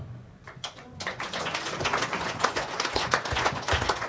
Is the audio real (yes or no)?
no